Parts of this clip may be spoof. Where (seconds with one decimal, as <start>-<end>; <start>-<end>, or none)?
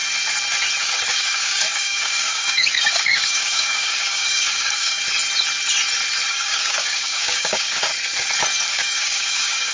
0.8-5.0; 6.3-7.9; 8.7-9.7